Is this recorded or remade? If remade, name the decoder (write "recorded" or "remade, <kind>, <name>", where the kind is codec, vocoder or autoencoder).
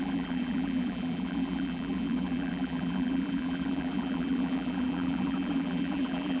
remade, vocoder, BigVGAN v2